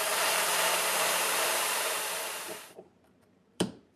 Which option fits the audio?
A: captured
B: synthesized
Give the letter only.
B